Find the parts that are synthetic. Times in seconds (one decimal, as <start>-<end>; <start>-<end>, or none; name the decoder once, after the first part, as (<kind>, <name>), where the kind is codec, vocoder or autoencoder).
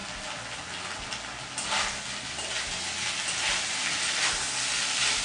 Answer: none